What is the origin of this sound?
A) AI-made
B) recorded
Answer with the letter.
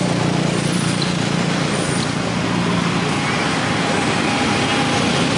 B